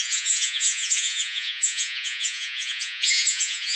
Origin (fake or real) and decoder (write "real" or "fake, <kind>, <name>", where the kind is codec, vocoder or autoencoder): fake, vocoder, Vocos